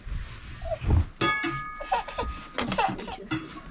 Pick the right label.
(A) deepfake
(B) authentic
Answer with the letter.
B